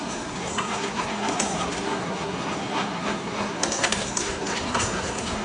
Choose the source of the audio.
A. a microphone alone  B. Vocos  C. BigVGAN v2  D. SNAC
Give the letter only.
D